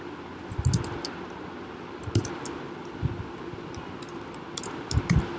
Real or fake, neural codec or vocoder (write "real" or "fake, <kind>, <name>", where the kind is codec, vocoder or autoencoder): real